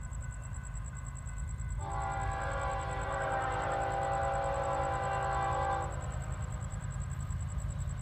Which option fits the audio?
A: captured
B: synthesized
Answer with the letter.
A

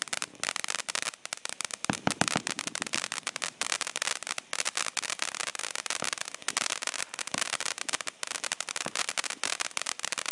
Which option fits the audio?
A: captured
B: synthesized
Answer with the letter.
A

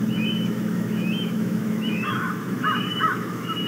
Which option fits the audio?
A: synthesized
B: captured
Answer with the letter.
A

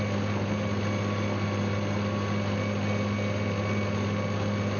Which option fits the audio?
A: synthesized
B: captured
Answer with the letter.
B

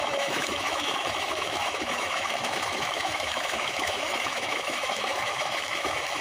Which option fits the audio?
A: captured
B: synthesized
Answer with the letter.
B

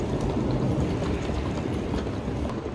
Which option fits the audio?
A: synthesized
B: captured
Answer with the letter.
B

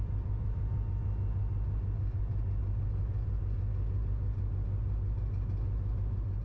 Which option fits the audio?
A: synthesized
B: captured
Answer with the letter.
B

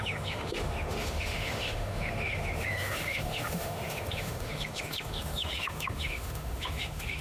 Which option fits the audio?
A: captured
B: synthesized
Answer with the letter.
B